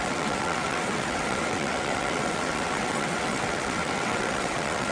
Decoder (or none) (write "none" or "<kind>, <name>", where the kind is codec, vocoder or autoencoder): vocoder, WaveNeXt